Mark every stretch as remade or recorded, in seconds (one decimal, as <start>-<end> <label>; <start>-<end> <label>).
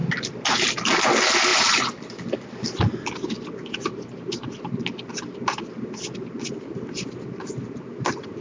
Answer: 0.0-8.4 recorded